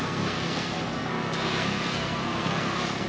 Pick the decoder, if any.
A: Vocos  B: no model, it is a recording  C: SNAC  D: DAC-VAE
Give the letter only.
C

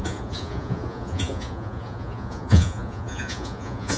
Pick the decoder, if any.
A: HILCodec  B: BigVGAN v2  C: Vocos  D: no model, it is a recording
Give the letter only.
C